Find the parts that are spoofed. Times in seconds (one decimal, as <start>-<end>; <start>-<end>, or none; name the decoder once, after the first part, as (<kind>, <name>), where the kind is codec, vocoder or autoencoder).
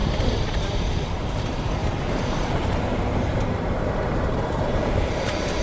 0.0-5.6 (vocoder, BigVGAN v2)